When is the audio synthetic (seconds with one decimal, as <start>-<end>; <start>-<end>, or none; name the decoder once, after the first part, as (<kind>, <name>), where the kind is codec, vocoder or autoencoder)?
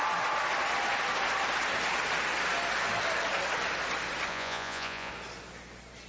4.3-5.1 (vocoder, Vocos)